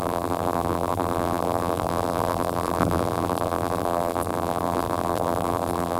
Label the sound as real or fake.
fake